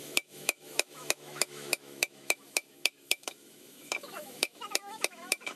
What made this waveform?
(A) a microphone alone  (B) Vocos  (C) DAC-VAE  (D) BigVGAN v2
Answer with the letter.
C